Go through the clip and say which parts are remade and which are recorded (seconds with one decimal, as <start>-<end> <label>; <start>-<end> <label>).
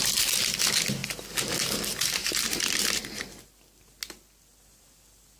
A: 0.0-2.2 recorded; 2.2-3.2 remade; 3.2-5.4 recorded